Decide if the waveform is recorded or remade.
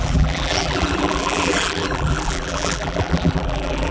remade